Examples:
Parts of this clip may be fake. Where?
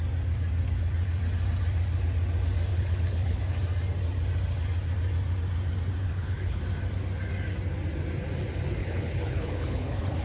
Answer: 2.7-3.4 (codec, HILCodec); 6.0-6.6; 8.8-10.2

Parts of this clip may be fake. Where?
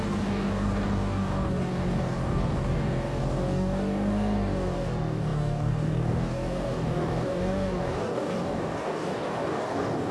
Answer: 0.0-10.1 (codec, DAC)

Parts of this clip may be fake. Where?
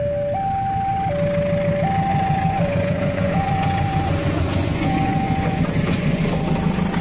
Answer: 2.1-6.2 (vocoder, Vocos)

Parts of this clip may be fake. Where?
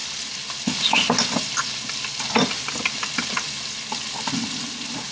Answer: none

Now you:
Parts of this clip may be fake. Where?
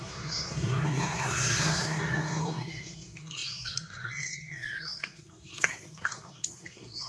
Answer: 0.0-7.1 (codec, SNAC)